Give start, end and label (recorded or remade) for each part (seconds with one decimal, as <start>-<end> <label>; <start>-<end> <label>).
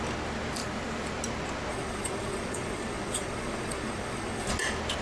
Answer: 0.0-1.7 recorded; 1.7-4.5 remade; 4.5-5.0 recorded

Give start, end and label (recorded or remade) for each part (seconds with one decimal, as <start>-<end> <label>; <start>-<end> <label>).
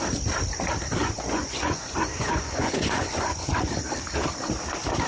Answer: 0.0-1.0 recorded; 1.0-3.5 remade; 3.5-5.1 recorded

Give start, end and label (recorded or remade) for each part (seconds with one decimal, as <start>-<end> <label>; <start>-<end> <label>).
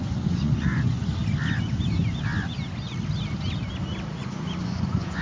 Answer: 0.0-1.0 remade; 1.0-4.1 recorded; 4.1-5.2 remade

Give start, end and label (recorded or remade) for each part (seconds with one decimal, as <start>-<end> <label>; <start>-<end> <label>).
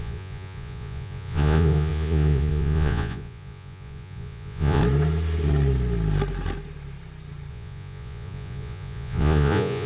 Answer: 0.0-4.8 remade; 4.8-7.5 recorded; 7.5-9.9 remade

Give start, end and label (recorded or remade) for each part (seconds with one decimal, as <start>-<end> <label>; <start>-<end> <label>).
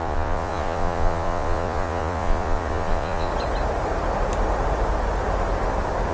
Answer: 0.0-3.3 remade; 3.3-6.1 recorded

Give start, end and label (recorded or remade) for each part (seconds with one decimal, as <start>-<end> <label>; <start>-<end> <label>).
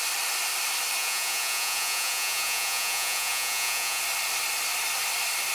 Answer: 0.0-1.0 recorded; 1.0-4.0 remade; 4.0-5.5 recorded